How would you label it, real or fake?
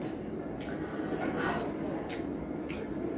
real